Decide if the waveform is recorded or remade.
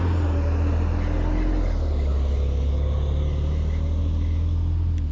recorded